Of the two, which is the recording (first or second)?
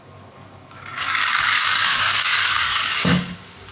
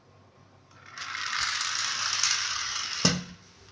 second